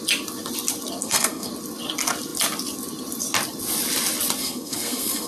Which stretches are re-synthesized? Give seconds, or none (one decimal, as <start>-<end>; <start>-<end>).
1.0-1.5; 4.4-5.3